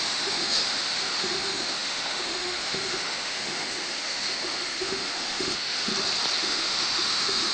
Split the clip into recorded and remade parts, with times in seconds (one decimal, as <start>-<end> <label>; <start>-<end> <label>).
0.0-5.9 remade; 5.9-6.4 recorded; 6.4-7.5 remade